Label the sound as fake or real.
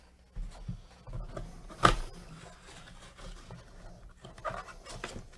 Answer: real